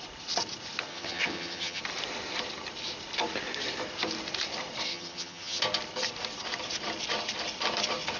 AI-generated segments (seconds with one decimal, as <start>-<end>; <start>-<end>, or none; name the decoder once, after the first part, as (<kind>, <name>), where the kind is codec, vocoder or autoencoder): 0.9-1.8 (vocoder, HiFi-GAN); 4.9-5.6